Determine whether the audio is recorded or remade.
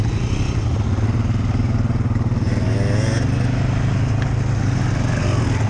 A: recorded